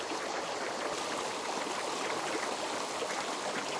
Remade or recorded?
recorded